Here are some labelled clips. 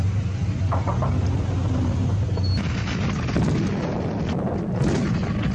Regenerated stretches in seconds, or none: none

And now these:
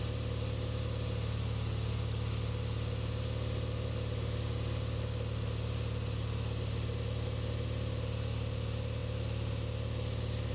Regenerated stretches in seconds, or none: none

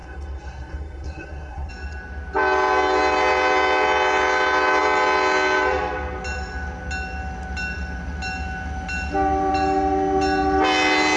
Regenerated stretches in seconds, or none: 0.0-1.7